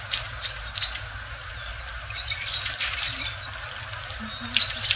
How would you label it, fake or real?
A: real